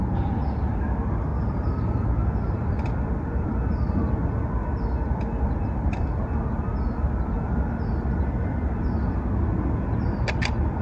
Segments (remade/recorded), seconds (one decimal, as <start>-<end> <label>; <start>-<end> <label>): 0.0-10.8 recorded